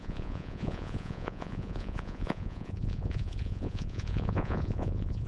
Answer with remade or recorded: remade